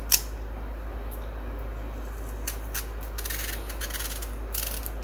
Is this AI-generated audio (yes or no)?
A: no